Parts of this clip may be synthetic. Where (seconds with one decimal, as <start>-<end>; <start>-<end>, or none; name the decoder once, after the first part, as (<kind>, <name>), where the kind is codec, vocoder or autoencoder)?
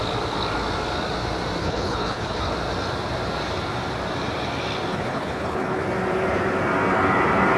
1.6-2.5 (codec, HILCodec); 4.9-5.8